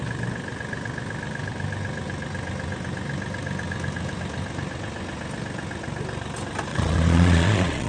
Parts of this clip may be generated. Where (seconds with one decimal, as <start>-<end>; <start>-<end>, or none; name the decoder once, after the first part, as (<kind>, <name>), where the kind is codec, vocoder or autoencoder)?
6.7-7.9 (vocoder, Vocos)